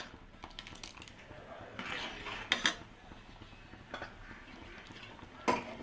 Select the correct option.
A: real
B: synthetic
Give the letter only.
A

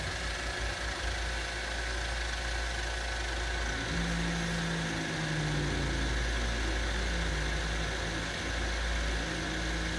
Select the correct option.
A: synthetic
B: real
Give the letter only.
B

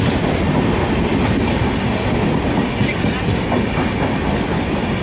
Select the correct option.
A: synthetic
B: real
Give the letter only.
B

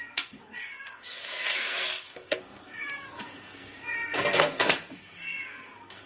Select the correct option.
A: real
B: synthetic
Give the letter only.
B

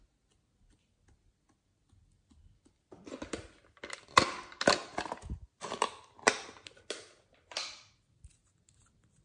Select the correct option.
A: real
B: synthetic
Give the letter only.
A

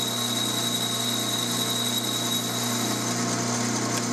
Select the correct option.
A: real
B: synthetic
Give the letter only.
A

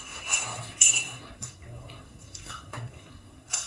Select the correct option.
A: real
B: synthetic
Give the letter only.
B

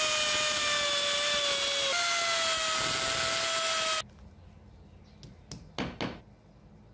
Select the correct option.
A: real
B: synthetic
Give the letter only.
A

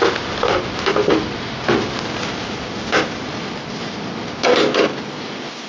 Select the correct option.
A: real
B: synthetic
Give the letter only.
A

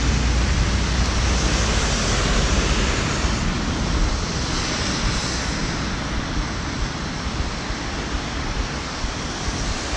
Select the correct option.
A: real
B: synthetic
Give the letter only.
A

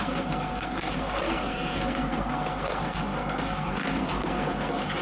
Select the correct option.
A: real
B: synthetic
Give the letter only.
B